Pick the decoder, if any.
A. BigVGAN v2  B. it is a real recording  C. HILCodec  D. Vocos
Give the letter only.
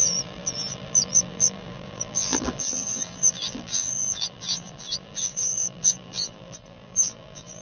A